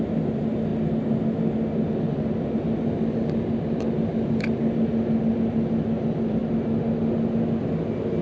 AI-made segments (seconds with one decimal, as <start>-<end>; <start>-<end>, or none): none